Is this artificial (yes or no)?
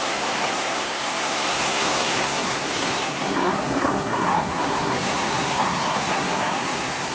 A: yes